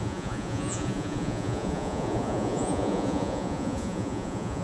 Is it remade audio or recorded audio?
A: remade